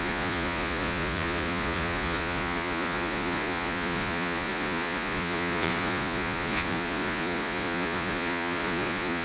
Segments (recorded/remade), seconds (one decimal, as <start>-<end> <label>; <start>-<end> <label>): 0.0-9.2 remade